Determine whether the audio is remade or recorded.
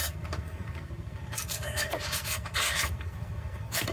remade